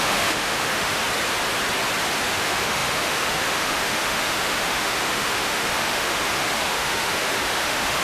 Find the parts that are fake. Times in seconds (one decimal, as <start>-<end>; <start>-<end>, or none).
0.0-1.0; 2.3-8.0